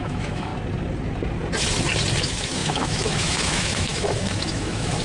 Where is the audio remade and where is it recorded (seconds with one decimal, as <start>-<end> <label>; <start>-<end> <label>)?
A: 0.0-0.5 remade; 0.5-2.2 recorded; 2.2-5.0 remade

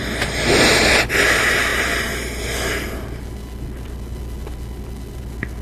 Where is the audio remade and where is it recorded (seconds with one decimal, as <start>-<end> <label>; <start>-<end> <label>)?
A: 0.0-5.6 recorded

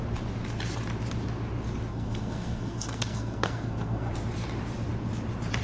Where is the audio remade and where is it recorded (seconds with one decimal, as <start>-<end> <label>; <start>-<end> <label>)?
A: 0.0-1.9 recorded; 1.9-4.1 remade; 4.1-5.6 recorded

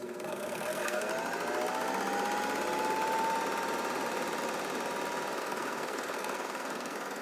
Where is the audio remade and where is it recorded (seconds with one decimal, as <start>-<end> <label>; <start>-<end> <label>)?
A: 0.0-1.1 remade; 1.1-5.4 recorded; 5.4-7.2 remade